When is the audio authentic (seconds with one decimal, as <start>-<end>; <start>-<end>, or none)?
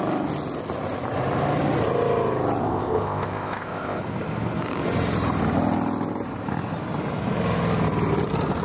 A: 0.0-2.6; 4.0-8.6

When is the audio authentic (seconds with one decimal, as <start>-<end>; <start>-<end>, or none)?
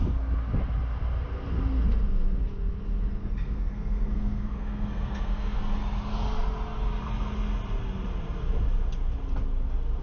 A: 0.0-3.2; 5.6-10.0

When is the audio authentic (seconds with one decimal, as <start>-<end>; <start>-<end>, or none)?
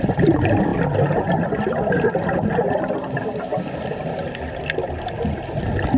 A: 0.0-6.0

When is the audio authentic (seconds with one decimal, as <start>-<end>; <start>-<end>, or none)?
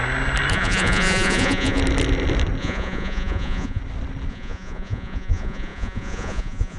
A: 0.0-0.5; 1.8-2.6; 3.8-4.3